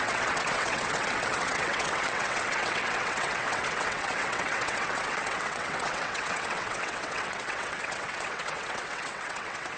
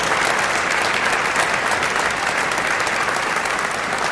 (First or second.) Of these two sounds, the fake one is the first